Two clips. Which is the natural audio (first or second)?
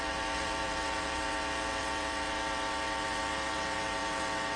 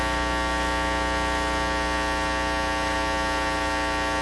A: second